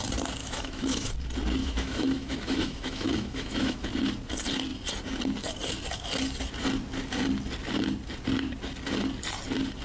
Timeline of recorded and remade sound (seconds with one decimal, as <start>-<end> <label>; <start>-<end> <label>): 0.0-0.4 recorded; 0.4-1.1 remade; 1.1-1.6 recorded; 1.6-3.9 remade; 3.9-9.8 recorded